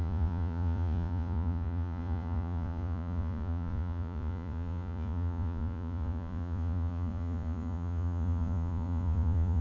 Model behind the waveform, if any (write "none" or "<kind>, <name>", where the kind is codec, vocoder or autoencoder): vocoder, Vocos